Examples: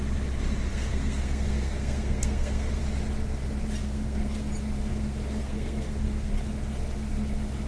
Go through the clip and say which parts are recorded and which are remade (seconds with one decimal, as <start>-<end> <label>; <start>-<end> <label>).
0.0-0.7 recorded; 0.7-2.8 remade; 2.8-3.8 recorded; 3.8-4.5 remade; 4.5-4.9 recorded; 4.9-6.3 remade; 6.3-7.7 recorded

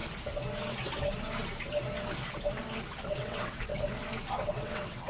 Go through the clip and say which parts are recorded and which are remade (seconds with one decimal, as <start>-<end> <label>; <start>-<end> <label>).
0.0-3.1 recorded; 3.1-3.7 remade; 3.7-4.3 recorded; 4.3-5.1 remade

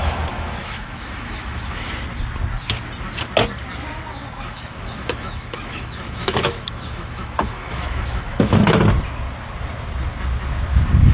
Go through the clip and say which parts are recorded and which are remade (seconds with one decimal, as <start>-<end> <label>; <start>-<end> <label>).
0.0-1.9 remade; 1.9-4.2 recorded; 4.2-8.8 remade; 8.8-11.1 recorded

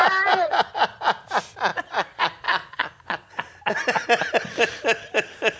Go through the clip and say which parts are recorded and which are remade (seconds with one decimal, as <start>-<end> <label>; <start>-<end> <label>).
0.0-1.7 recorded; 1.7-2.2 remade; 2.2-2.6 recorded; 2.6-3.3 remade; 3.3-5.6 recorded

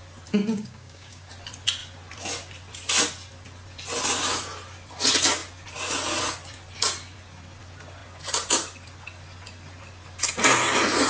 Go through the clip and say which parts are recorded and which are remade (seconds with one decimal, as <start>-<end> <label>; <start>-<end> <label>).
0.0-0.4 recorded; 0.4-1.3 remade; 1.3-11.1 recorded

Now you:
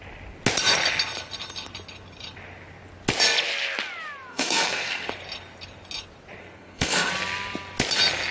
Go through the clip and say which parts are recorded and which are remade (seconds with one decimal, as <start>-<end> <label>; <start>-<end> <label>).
0.0-4.3 recorded; 4.3-5.1 remade; 5.1-6.4 recorded; 6.4-7.1 remade; 7.1-8.3 recorded

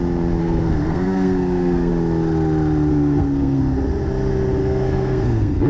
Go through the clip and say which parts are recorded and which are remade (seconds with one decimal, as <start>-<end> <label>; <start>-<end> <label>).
0.0-0.4 recorded; 0.4-1.9 remade; 1.9-2.9 recorded; 2.9-3.6 remade; 3.6-4.6 recorded; 4.6-5.7 remade